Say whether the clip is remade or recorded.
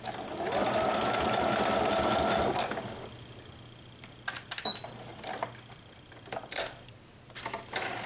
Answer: recorded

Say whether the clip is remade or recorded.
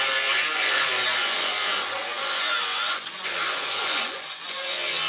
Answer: remade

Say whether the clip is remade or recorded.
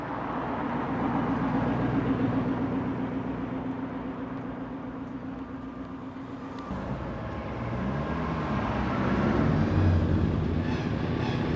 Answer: recorded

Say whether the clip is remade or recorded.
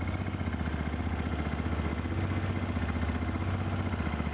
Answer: recorded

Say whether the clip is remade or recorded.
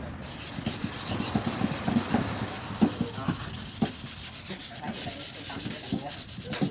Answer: recorded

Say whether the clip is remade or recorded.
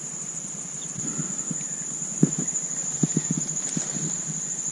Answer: recorded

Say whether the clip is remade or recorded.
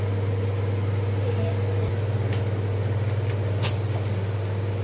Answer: recorded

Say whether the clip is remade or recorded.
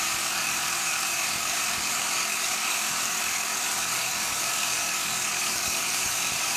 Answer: remade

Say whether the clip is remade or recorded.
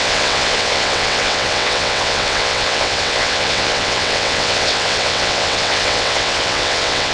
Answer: remade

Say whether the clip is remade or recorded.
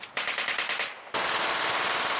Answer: recorded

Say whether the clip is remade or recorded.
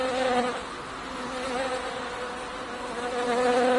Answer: recorded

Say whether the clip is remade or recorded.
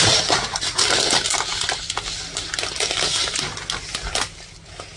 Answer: recorded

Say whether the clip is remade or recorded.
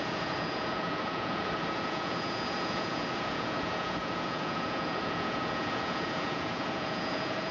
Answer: remade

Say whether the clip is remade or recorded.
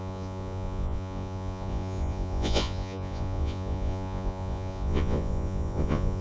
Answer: remade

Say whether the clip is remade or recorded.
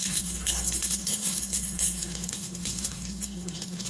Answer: remade